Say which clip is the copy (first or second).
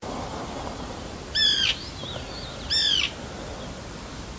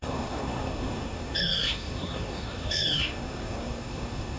second